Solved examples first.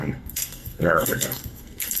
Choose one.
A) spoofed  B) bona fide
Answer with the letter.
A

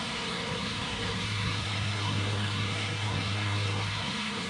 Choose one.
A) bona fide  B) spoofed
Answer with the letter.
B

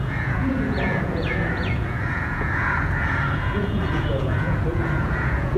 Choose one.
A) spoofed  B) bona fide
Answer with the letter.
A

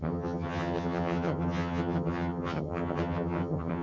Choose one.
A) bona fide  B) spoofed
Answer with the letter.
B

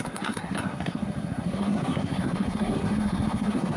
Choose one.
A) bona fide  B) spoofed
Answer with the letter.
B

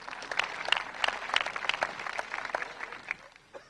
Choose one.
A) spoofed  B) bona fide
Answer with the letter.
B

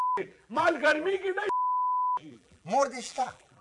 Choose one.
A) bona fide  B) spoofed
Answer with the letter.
B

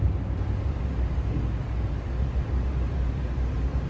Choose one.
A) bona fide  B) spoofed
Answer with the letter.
A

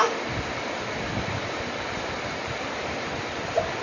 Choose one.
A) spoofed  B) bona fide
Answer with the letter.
A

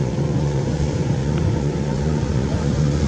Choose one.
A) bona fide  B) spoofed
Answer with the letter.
B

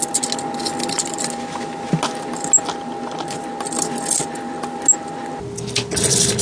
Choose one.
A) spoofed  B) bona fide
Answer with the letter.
B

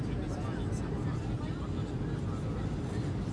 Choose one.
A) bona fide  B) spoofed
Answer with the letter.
A